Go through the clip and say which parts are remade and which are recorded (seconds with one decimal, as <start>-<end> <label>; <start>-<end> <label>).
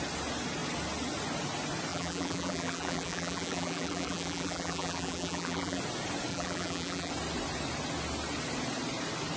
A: 0.0-1.9 recorded; 1.9-5.8 remade; 5.8-6.3 recorded; 6.3-7.1 remade; 7.1-9.4 recorded